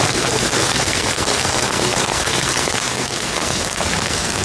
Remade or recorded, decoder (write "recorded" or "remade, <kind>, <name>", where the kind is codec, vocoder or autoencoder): remade, codec, SNAC